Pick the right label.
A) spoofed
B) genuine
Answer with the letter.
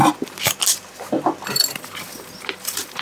B